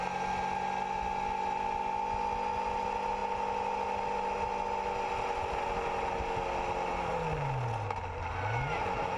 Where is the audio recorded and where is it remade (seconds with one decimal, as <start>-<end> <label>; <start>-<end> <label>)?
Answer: 0.0-9.2 recorded